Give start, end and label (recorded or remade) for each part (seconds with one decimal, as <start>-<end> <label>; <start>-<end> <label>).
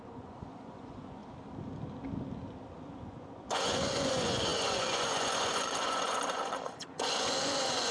0.0-1.2 remade; 1.2-2.8 recorded; 2.8-7.9 remade